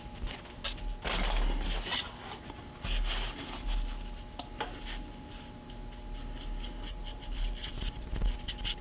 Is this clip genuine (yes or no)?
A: yes